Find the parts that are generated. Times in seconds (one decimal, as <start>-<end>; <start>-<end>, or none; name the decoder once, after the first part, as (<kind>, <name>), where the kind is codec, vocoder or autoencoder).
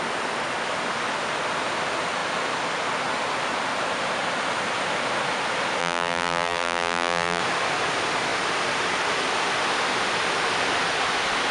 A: 5.8-7.4 (vocoder, BigVGAN v2)